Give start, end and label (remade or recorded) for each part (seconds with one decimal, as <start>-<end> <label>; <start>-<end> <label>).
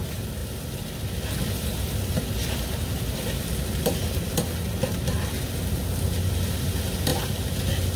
0.0-8.0 recorded